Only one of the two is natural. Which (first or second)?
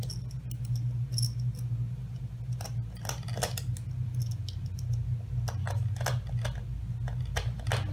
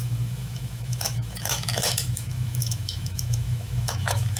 first